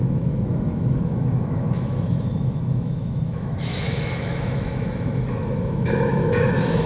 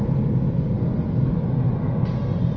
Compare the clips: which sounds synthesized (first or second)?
first